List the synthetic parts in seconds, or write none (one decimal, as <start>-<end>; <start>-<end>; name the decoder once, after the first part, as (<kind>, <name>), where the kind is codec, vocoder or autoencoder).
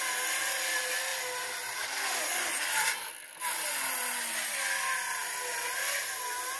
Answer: none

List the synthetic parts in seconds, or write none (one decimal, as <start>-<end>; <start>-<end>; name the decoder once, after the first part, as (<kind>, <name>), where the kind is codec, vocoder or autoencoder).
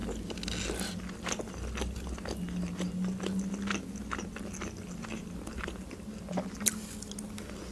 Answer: none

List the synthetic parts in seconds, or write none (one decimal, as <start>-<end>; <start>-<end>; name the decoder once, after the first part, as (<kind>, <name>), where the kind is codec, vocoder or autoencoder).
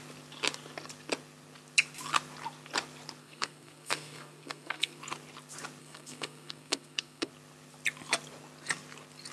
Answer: 3.2-5.0 (codec, SNAC); 5.8-7.3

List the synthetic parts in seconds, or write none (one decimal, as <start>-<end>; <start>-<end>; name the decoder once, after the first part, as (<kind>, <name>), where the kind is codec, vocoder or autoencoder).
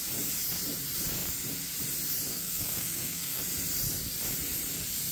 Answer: 2.3-3.4 (codec, SNAC)